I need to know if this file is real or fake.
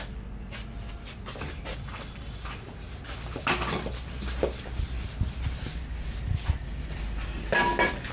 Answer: real